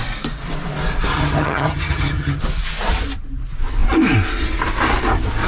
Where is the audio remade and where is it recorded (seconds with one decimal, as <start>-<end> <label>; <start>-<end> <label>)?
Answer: 0.0-1.1 recorded; 1.1-2.4 remade; 2.4-5.5 recorded